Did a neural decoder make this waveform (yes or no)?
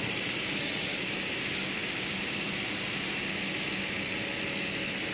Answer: no